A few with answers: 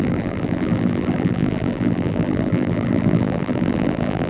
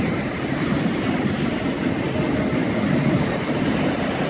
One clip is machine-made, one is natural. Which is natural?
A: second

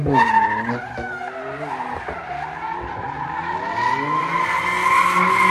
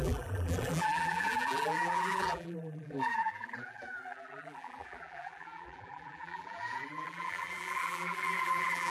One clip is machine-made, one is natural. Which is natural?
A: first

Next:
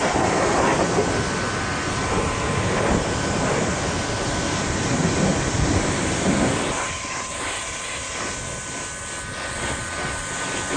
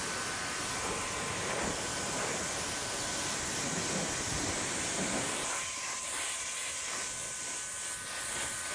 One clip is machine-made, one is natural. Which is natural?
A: first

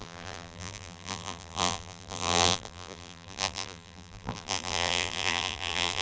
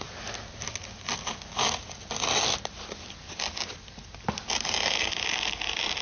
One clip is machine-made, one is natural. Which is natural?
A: second